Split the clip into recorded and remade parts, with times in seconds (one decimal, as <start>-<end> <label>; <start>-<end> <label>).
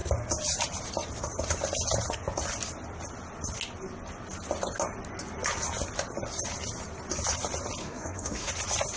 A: 0.0-7.8 recorded; 7.8-8.5 remade; 8.5-9.0 recorded